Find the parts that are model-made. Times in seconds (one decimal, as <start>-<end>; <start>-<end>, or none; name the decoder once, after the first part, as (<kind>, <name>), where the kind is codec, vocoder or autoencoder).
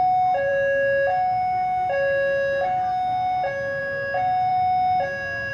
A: none